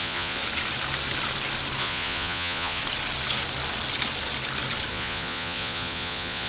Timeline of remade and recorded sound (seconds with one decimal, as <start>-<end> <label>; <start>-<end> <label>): 0.0-0.4 remade; 0.4-1.8 recorded; 1.8-2.8 remade; 2.8-4.9 recorded; 4.9-6.5 remade